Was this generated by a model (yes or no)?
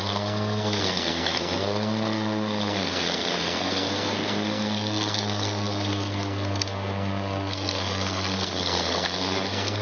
yes